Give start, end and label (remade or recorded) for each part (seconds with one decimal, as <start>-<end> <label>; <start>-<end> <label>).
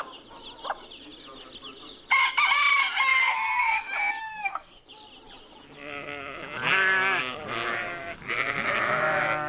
0.0-3.1 recorded; 3.1-3.8 remade; 3.8-4.2 recorded; 4.2-4.9 remade; 4.9-9.5 recorded